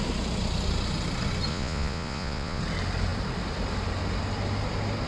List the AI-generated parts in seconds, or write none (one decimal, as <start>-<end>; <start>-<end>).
1.5-2.6